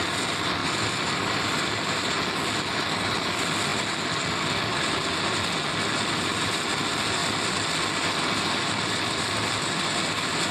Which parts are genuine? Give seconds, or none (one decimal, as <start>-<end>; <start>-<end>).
0.0-0.6; 1.7-7.2; 8.1-10.5